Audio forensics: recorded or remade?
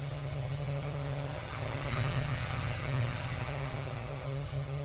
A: remade